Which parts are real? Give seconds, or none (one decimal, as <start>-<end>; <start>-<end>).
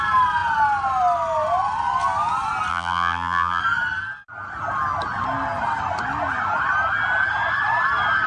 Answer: 0.0-2.7; 3.6-8.3